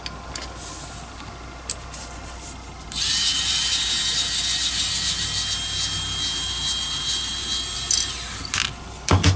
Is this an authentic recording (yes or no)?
yes